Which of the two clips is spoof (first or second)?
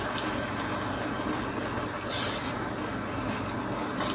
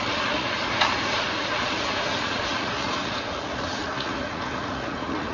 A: second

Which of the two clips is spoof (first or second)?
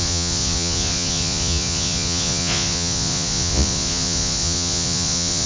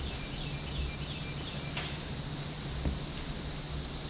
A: first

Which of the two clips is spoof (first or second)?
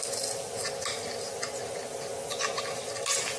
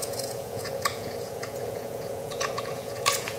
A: second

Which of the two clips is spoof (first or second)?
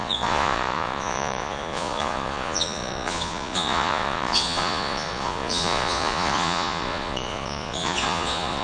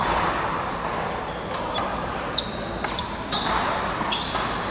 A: first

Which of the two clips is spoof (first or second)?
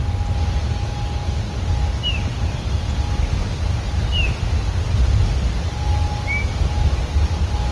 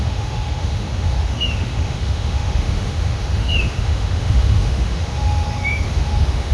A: second